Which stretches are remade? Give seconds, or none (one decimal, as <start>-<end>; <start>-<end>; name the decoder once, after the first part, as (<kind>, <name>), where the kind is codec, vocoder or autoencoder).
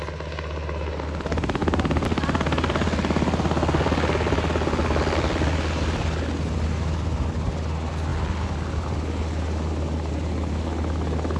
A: none